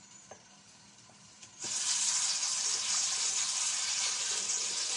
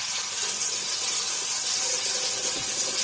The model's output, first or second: first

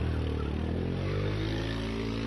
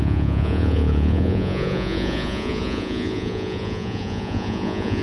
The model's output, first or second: second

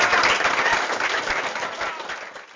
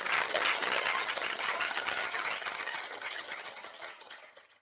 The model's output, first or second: second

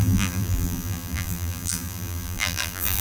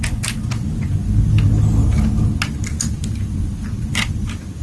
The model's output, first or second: first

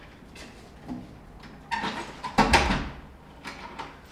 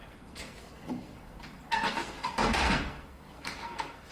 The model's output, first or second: second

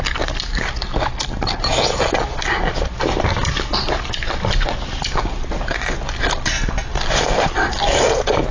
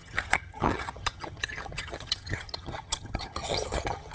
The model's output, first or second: second